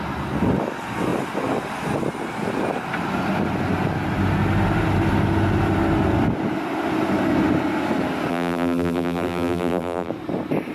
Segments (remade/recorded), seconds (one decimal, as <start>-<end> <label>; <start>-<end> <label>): 0.0-8.3 recorded; 8.3-10.1 remade; 10.1-10.7 recorded

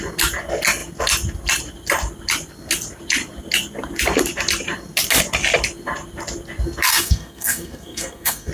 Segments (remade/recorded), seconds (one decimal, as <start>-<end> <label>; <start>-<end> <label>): 0.0-6.9 recorded; 6.9-8.5 remade

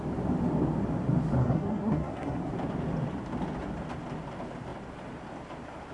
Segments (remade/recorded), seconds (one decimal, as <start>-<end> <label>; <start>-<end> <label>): 0.0-1.4 recorded; 1.4-2.5 remade; 2.5-5.9 recorded

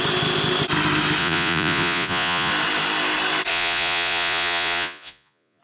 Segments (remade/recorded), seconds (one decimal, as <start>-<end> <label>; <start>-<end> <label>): 0.0-1.2 recorded; 1.2-2.5 remade; 2.5-3.5 recorded; 3.5-5.6 remade

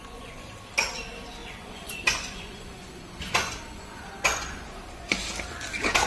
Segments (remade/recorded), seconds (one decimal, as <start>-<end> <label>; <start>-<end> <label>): 0.0-0.6 remade; 0.6-1.4 recorded; 1.4-5.1 remade; 5.1-6.1 recorded